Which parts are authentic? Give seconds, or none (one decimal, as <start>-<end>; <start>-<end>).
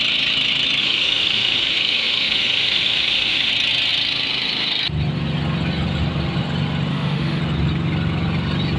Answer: 0.0-0.8; 3.5-6.9; 7.4-8.8